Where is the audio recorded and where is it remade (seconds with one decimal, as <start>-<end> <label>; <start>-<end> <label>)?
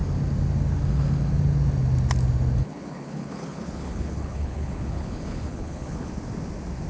0.0-2.6 recorded; 2.6-6.1 remade; 6.1-6.9 recorded